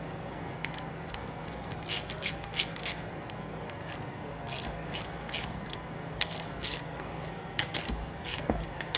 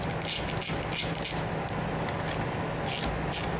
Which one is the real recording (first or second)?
second